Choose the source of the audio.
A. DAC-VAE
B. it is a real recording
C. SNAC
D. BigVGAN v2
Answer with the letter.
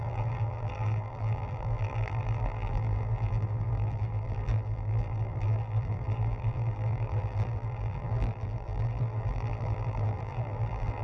D